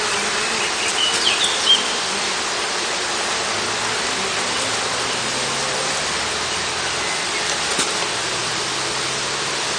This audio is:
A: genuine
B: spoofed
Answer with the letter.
A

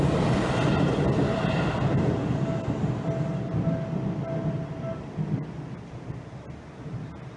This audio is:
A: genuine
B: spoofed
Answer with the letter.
A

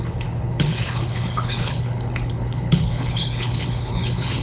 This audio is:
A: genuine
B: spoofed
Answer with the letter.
B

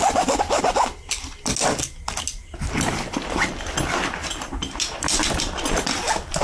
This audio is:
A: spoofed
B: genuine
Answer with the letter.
B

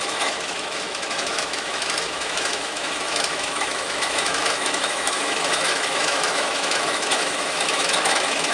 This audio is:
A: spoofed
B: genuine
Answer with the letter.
A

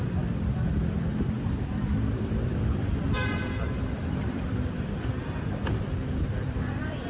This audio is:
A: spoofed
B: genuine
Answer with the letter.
A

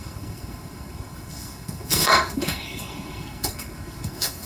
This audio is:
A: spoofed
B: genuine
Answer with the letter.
A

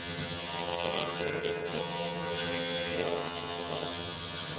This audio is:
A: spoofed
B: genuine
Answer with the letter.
A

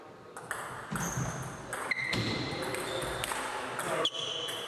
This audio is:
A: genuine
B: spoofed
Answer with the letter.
A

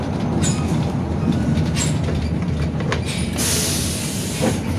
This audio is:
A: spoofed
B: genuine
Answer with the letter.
B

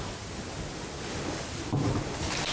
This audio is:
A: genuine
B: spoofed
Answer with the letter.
A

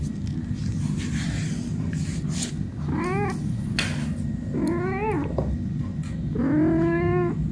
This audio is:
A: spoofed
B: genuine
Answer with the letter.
B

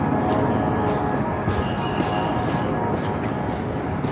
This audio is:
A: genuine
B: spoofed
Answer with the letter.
A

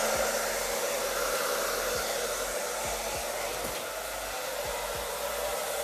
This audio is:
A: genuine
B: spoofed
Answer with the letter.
A